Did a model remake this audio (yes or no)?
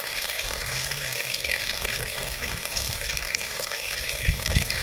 yes